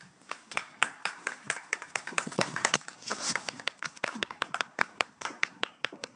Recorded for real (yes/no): no